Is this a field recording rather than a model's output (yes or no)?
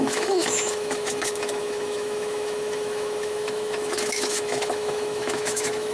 no